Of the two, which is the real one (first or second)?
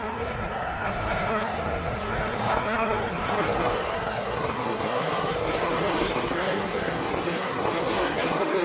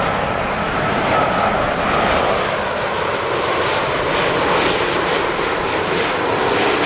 second